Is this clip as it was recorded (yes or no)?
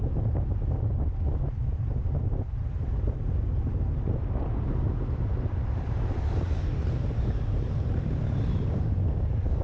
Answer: no